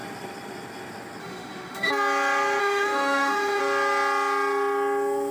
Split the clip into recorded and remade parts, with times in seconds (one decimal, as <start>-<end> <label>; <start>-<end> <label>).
0.0-1.2 recorded; 1.2-1.9 remade; 1.9-2.6 recorded; 2.6-3.6 remade; 3.6-5.3 recorded